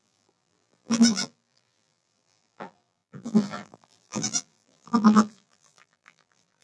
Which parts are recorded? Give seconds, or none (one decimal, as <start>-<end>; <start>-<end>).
none